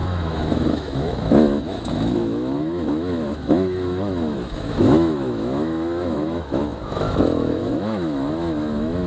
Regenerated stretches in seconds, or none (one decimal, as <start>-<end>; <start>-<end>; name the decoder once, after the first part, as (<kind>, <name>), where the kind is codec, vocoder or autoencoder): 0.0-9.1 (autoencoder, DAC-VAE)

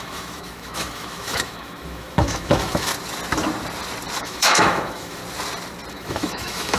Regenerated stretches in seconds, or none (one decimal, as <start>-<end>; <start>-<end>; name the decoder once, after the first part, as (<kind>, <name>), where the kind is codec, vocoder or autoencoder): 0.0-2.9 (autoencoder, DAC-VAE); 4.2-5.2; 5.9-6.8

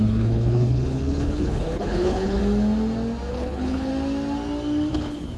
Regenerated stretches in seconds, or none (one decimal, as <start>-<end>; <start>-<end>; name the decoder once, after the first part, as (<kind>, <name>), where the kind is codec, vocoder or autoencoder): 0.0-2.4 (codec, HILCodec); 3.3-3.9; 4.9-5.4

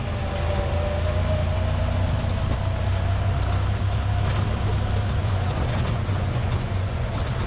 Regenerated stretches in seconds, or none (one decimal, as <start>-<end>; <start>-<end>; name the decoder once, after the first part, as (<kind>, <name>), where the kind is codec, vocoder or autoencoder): 5.2-7.1 (vocoder, Vocos)

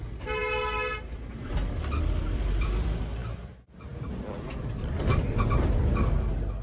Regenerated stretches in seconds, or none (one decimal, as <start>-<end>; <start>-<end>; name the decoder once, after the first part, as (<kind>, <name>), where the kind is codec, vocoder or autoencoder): 0.0-0.4 (vocoder, BigVGAN v2); 2.2-3.2; 5.2-6.6

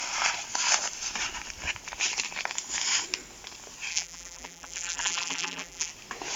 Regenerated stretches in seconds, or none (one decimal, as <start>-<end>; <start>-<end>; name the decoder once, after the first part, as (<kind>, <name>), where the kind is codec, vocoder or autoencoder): 3.9-5.9 (vocoder, BigVGAN v2)